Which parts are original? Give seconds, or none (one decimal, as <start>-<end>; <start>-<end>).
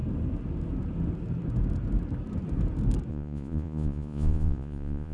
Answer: 0.0-3.1